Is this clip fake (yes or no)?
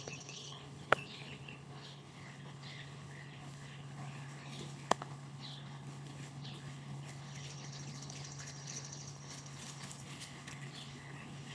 yes